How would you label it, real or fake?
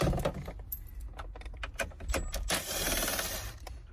real